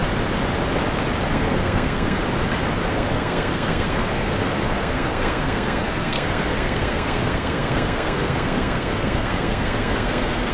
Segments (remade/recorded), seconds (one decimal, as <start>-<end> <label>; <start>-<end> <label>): 0.0-1.3 recorded; 1.3-2.2 remade; 2.2-2.9 recorded; 2.9-10.5 remade